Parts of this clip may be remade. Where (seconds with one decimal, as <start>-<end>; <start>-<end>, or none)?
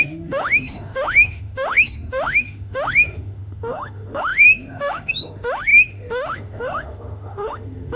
0.0-8.0